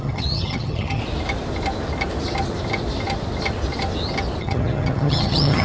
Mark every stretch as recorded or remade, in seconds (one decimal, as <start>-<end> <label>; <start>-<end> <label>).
0.0-1.0 remade; 1.0-4.4 recorded; 4.4-5.6 remade